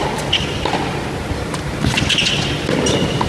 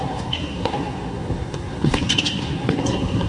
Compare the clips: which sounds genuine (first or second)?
first